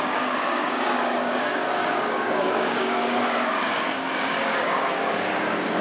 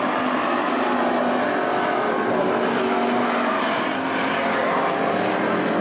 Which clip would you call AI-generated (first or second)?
first